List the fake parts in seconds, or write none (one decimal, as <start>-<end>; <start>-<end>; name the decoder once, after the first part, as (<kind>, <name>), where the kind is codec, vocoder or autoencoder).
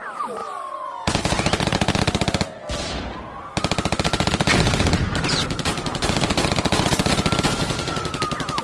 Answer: 0.0-0.4 (vocoder, BigVGAN v2); 1.2-1.7; 5.0-5.7